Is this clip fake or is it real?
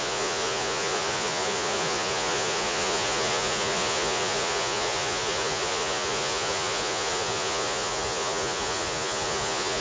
fake